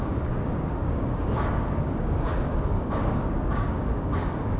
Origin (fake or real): fake